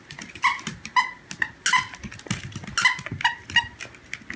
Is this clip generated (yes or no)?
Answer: no